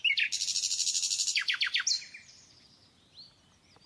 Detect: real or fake real